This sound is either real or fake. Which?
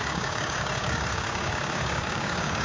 fake